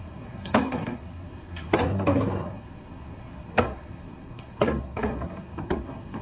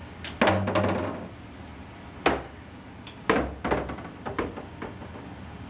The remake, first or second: first